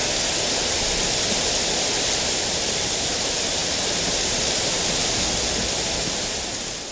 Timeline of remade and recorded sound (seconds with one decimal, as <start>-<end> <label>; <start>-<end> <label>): 0.0-6.9 recorded